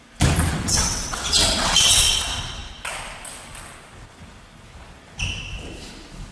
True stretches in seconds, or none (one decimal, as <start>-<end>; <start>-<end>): 0.0-0.5; 2.2-6.3